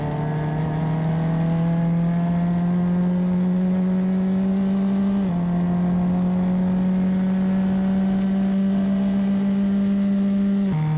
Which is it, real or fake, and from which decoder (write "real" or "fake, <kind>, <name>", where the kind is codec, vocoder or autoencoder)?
real